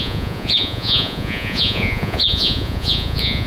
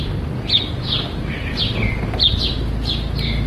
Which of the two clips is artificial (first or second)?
first